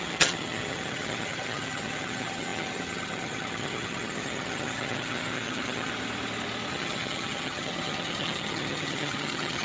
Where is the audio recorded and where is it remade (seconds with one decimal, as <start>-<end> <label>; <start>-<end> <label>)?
0.0-5.9 remade; 5.9-6.7 recorded; 6.7-9.6 remade